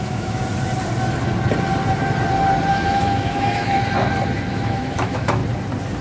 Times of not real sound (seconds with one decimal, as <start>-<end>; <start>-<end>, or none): 0.0-0.4; 2.7-3.8; 4.5-5.4